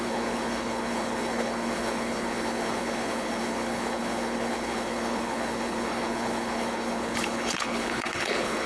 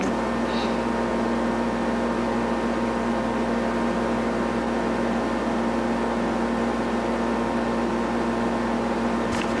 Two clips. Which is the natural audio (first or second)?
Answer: second